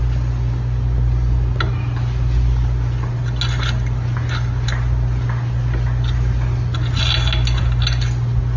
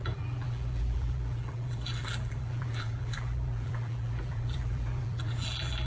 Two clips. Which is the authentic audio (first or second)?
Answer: first